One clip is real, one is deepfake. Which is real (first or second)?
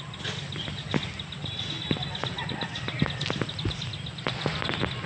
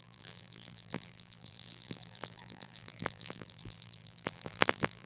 first